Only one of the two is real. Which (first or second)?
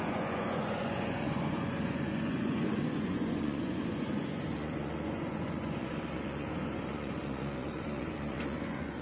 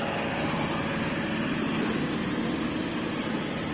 second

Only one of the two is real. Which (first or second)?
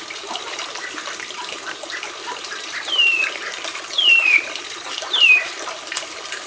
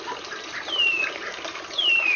second